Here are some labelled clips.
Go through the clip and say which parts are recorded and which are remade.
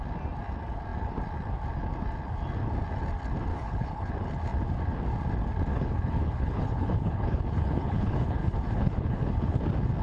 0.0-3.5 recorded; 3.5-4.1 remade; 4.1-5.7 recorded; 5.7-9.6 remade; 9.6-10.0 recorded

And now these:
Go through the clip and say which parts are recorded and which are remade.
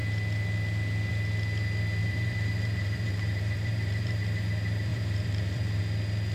0.0-2.0 recorded; 2.0-4.2 remade; 4.2-4.9 recorded; 4.9-5.8 remade; 5.8-6.3 recorded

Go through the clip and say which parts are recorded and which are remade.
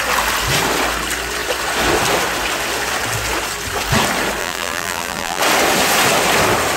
0.0-4.4 recorded; 4.4-5.4 remade; 5.4-6.8 recorded